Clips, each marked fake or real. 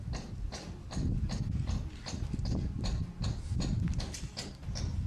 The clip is real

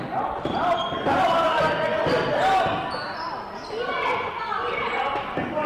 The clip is real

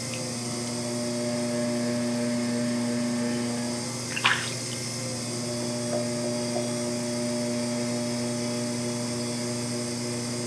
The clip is real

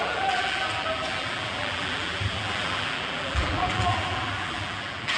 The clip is fake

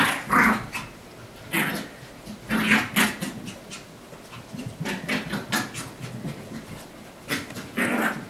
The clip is real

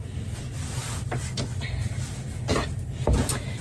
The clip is real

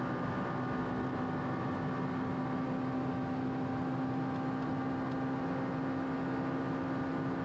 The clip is real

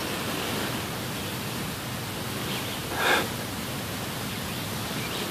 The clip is real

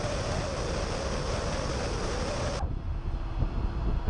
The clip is real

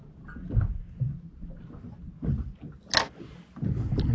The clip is real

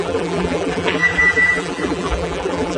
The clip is fake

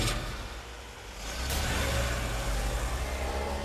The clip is real